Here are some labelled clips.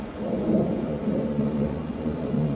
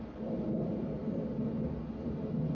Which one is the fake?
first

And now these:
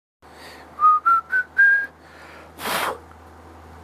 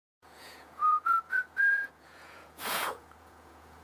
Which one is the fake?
second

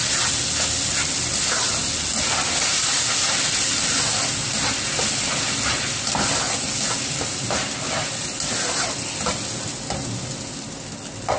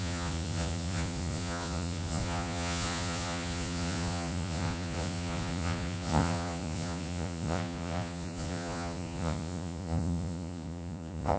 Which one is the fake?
second